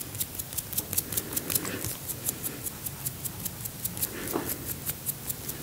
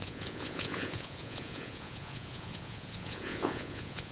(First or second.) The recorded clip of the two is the first